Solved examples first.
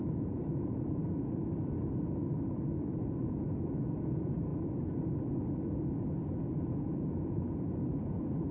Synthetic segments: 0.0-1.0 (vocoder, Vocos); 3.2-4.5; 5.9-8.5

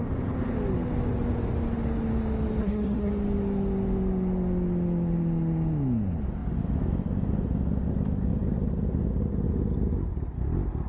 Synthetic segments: 2.6-3.1 (codec, SNAC)